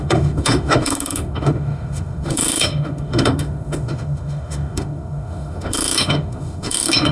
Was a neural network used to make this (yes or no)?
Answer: yes